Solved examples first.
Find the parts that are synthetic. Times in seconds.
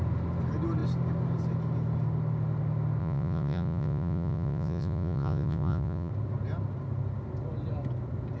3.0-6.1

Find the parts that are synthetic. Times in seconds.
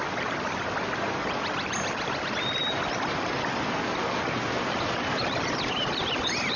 none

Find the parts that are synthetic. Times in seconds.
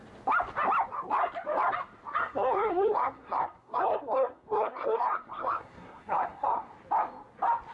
2.2-6.7